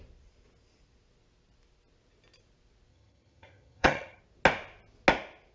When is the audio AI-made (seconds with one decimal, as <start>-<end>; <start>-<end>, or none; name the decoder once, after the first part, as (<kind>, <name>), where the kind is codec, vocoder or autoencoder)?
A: 2.9-4.2 (vocoder, HiFi-GAN)